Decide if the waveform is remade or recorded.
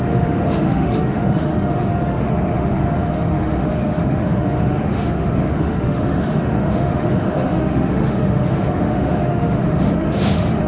remade